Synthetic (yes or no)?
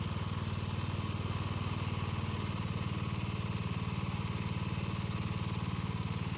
no